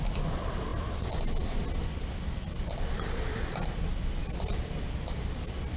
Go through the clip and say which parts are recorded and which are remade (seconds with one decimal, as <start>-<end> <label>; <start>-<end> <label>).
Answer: 0.0-5.8 recorded